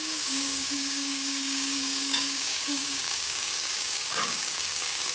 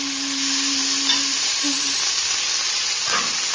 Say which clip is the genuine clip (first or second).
second